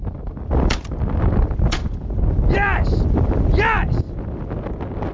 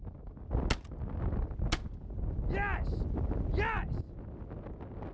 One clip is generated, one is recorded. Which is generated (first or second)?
first